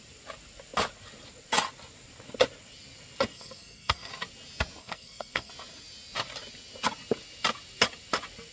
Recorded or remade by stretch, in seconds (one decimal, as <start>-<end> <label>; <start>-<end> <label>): 0.0-3.3 recorded; 3.3-4.1 remade; 4.1-4.8 recorded; 4.8-5.5 remade; 5.5-8.5 recorded